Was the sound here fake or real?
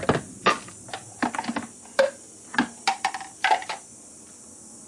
real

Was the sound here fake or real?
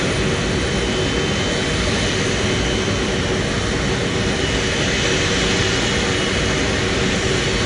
real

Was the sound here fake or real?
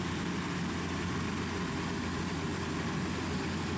real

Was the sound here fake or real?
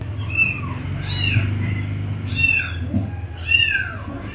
real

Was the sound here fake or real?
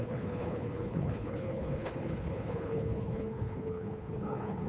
fake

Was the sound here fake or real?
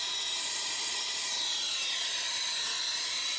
real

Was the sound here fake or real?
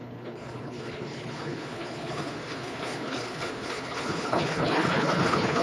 fake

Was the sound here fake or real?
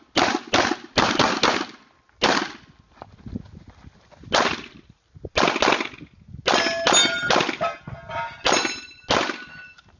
real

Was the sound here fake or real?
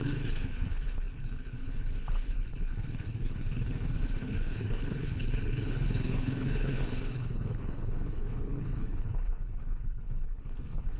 fake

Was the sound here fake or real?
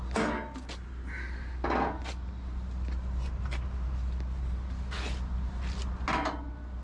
real